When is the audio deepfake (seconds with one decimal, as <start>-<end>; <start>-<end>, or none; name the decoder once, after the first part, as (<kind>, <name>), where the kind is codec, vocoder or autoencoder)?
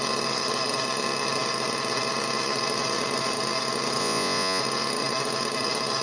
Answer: 4.0-4.6 (vocoder, Vocos)